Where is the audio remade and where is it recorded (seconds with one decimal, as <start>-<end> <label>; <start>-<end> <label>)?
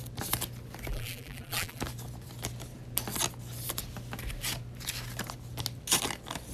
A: 0.0-0.9 recorded; 0.9-1.8 remade; 1.8-6.5 recorded